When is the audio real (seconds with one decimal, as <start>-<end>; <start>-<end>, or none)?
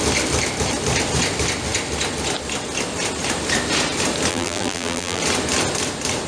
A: 0.0-4.3; 5.2-6.3